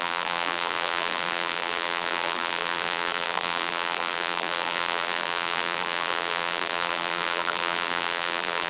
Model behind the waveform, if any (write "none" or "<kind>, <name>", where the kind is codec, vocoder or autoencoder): vocoder, BigVGAN v2